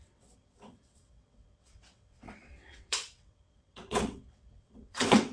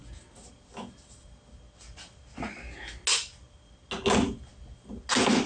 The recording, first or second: second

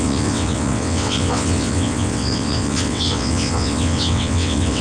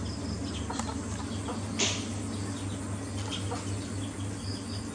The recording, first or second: second